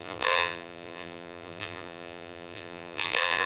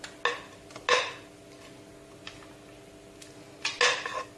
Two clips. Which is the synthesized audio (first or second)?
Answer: first